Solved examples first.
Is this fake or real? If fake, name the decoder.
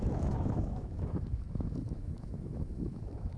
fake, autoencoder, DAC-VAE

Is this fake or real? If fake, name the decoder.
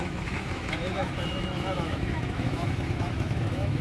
fake, autoencoder, DAC-VAE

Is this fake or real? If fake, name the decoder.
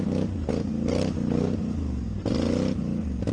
real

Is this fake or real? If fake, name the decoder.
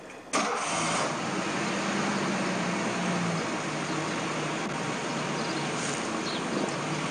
real